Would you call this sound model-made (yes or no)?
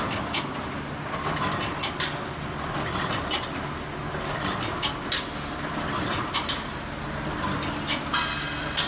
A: no